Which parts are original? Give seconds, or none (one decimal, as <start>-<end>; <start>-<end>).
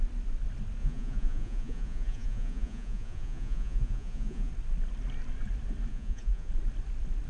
0.0-0.8; 4.5-5.9; 6.5-7.3